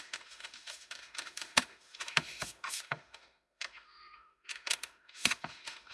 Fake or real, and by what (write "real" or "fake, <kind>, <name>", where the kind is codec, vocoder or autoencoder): fake, autoencoder, DAC-VAE